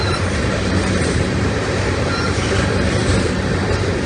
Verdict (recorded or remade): remade